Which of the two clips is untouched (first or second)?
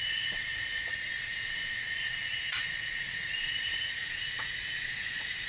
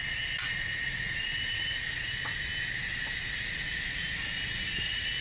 second